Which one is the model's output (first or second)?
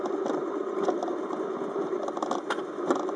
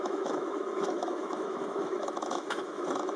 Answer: second